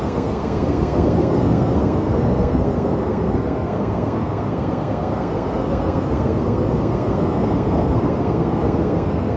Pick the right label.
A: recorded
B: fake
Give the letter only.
B